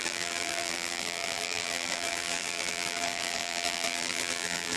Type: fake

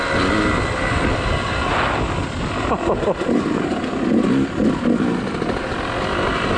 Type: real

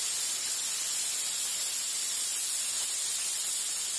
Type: real